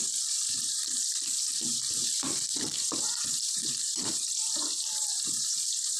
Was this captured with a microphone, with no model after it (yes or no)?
no